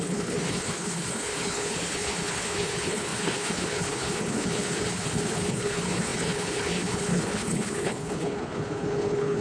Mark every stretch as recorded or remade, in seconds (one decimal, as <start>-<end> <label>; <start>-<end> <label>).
0.0-9.4 remade